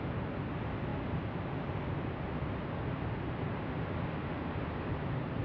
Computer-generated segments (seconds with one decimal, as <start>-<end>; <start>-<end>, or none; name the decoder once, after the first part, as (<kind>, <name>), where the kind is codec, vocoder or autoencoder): none